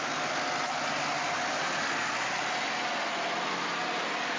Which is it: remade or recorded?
recorded